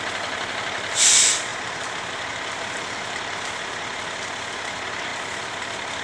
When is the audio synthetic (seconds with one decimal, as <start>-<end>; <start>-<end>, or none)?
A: 0.0-6.0